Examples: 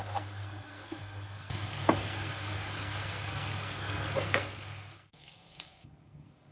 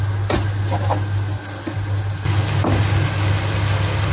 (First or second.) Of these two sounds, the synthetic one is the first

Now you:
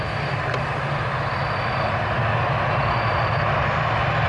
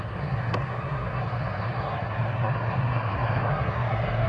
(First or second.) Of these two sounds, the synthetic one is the second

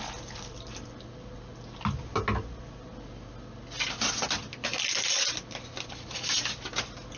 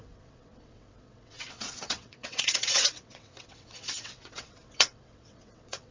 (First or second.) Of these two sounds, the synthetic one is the second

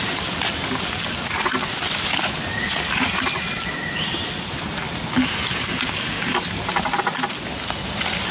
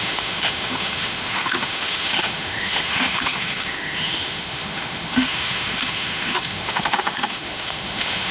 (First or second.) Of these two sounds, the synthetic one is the second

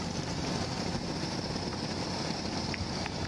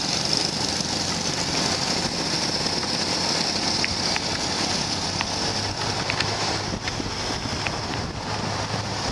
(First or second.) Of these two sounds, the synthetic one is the first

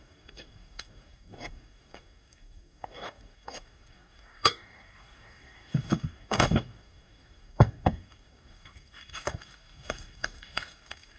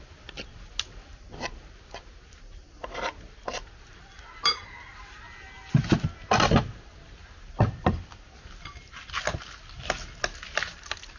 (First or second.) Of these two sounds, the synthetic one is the first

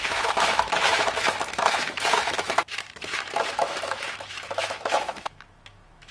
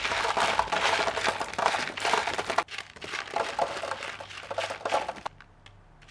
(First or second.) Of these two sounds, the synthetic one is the first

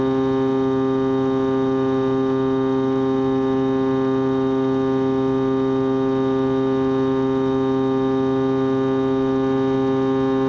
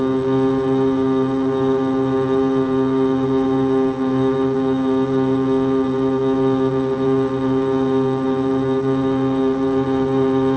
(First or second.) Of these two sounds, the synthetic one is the second